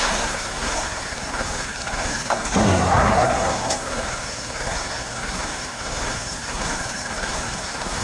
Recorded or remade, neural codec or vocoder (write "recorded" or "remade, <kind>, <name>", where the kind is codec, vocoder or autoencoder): remade, codec, SNAC